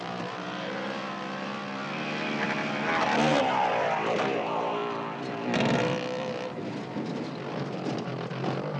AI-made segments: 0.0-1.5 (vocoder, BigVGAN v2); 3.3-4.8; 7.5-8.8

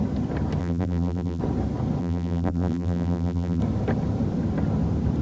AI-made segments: 0.6-1.4 (vocoder, BigVGAN v2); 2.0-3.6

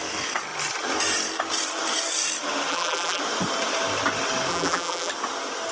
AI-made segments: 2.7-3.2 (vocoder, BigVGAN v2); 4.5-5.1